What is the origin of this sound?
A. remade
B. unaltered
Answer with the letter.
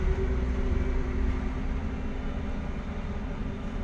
B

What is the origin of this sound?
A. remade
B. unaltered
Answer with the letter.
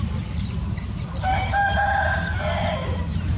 B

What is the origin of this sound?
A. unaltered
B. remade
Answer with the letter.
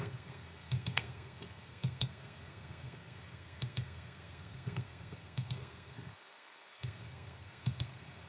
B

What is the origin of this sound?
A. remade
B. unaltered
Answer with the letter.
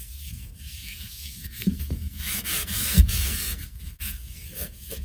A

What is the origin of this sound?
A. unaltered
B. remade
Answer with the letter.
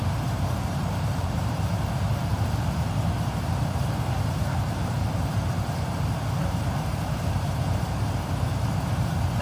B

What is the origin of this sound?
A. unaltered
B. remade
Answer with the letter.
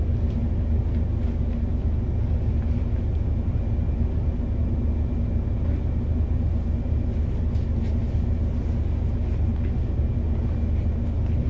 A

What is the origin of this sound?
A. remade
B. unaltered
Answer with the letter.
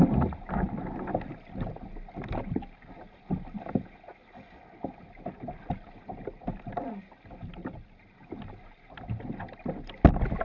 B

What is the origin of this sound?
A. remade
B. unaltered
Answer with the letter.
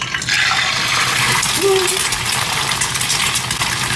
B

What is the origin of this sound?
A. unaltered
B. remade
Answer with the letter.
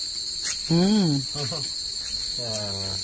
A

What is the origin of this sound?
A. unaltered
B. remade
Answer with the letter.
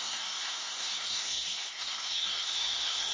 B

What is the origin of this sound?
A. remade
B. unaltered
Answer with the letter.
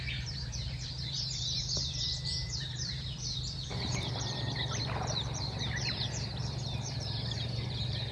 A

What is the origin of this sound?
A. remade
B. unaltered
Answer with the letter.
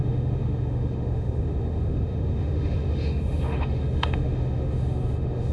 A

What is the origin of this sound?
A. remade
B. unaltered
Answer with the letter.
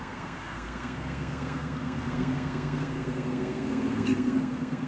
A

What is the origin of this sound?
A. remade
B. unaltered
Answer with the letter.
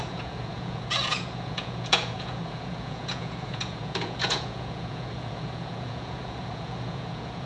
A